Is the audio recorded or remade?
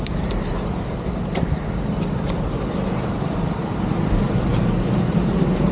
recorded